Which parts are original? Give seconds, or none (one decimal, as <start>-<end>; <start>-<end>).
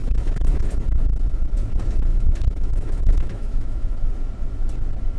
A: 0.8-2.1; 4.1-5.2